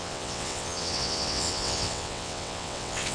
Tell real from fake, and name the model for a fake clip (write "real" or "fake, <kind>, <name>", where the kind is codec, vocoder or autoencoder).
fake, vocoder, WaveNeXt